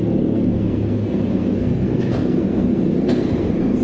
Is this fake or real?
fake